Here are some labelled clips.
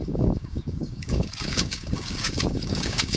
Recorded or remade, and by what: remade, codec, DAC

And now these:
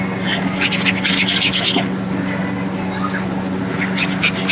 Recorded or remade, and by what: recorded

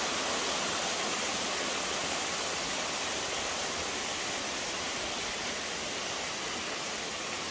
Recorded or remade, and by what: recorded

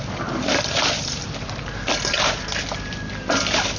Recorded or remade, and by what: recorded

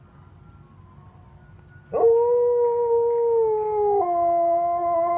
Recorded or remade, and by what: recorded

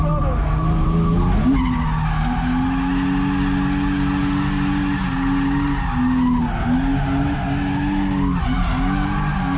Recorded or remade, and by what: recorded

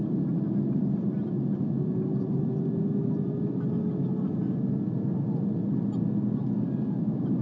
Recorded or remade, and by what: recorded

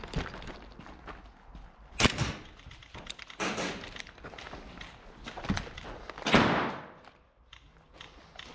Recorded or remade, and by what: recorded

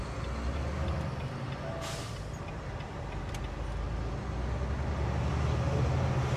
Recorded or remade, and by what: recorded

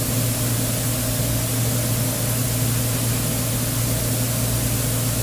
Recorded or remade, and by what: recorded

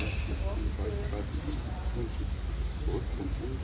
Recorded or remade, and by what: recorded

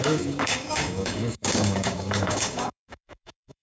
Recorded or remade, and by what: remade, codec, DAC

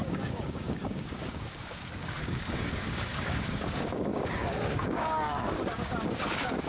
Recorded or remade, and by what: remade, codec, DAC